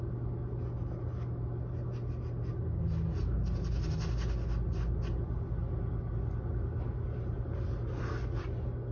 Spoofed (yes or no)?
no